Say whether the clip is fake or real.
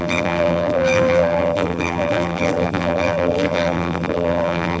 fake